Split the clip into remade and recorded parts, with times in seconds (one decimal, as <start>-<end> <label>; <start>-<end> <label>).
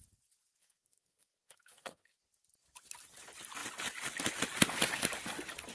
0.0-0.6 recorded; 0.6-2.2 remade; 2.2-5.7 recorded